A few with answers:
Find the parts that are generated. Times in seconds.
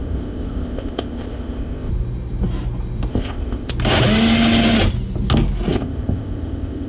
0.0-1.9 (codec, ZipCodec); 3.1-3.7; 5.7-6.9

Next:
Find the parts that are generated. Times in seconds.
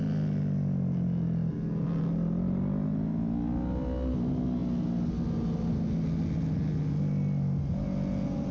none